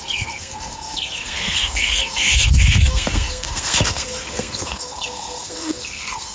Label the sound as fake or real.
fake